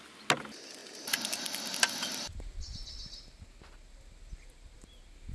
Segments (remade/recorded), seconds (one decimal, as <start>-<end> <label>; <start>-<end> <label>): 0.0-5.3 recorded